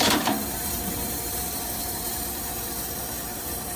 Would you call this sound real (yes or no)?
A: no